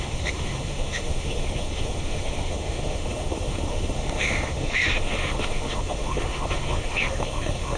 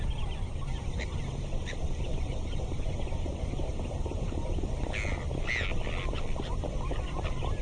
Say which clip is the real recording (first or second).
second